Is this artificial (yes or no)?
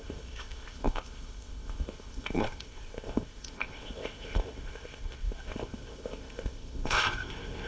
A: yes